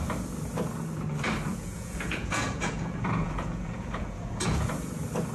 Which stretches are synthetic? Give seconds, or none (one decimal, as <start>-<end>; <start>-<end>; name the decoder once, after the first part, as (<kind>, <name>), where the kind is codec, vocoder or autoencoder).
1.5-4.7 (vocoder, Vocos)